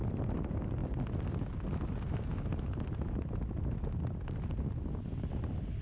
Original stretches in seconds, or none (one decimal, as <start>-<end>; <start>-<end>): 0.0-5.8